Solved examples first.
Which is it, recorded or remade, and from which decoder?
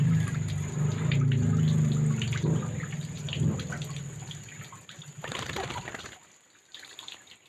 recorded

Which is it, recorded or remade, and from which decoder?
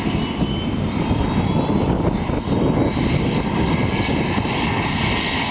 recorded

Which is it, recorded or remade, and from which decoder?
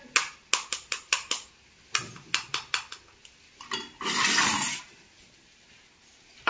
recorded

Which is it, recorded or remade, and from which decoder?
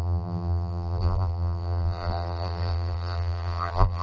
remade, vocoder, BigVGAN v2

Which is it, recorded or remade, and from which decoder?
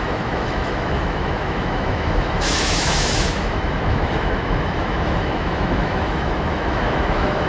remade, autoencoder, DAC-VAE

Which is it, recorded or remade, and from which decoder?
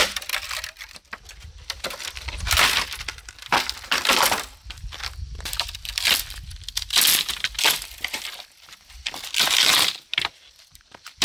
remade, vocoder, BigVGAN v2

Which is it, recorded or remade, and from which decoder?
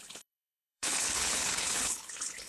remade, codec, HILCodec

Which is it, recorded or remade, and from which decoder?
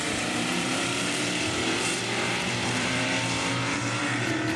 remade, vocoder, BigVGAN v2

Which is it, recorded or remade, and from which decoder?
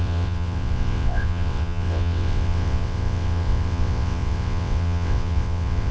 remade, vocoder, WaveNeXt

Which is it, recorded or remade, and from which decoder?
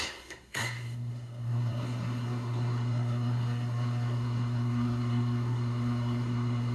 remade, codec, SNAC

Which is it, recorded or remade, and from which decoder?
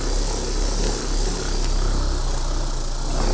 recorded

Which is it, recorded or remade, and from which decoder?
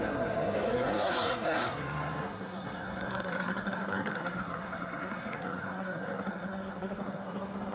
remade, codec, SNAC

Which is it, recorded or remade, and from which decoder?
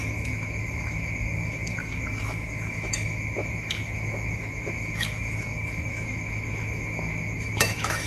remade, autoencoder, DAC-VAE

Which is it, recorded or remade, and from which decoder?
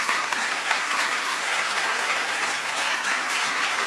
remade, codec, SNAC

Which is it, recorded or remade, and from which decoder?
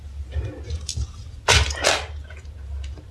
recorded